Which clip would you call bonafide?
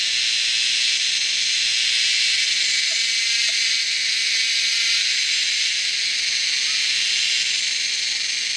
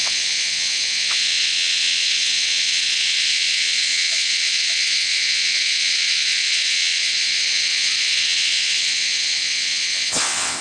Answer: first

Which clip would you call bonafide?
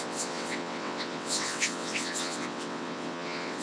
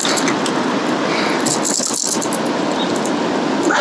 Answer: second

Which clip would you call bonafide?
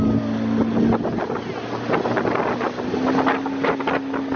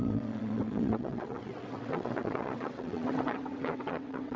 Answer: first